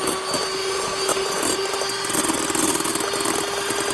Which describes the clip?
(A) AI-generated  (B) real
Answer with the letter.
B